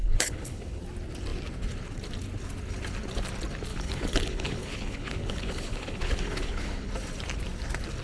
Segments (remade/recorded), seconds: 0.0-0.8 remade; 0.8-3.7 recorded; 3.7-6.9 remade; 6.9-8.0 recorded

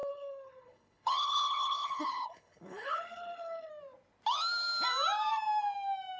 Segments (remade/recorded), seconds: 0.0-3.7 remade; 3.7-6.2 recorded

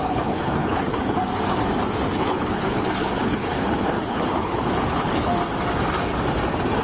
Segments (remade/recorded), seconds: 0.0-1.0 remade; 1.0-2.1 recorded; 2.1-5.3 remade; 5.3-6.8 recorded

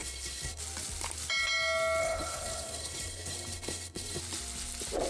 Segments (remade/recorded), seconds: 0.0-0.6 remade; 0.6-2.0 recorded; 2.0-4.2 remade; 4.2-5.1 recorded

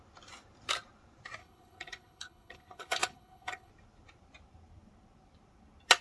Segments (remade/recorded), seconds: 0.0-1.4 recorded; 1.4-3.7 remade; 3.7-6.0 recorded

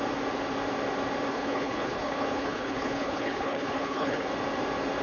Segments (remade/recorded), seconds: 0.0-1.3 recorded; 1.3-4.3 remade; 4.3-5.0 recorded

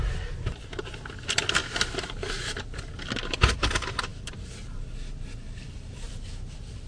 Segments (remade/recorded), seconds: 0.0-6.9 recorded

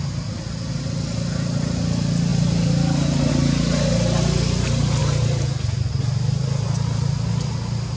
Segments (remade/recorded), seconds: 0.0-8.0 recorded